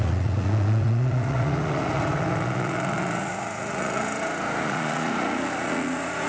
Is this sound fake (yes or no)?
yes